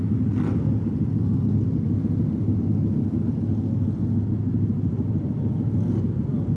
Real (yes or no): yes